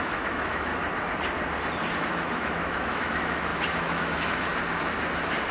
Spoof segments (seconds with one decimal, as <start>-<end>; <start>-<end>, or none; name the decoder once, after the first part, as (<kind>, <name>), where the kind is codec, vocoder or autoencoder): 0.0-0.7 (autoencoder, DAC-VAE); 2.0-4.5